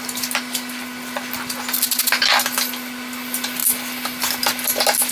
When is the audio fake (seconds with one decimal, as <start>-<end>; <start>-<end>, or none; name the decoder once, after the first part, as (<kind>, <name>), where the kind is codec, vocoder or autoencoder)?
none